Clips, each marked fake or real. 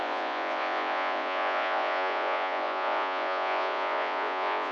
fake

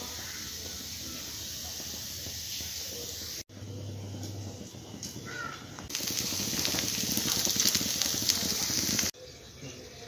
real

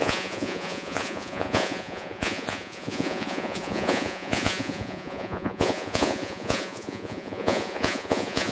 fake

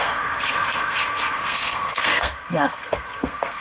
fake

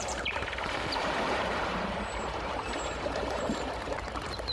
fake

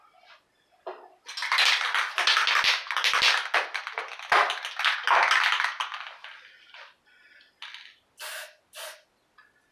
real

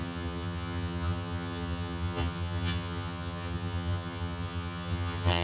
fake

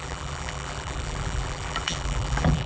fake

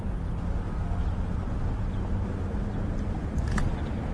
real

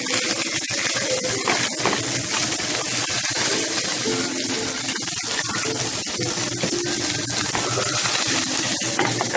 real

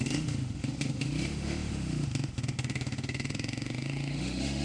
fake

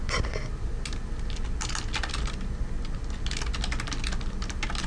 real